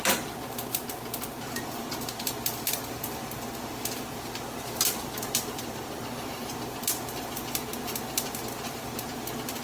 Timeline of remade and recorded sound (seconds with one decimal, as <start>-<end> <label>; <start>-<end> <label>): 0.0-9.6 recorded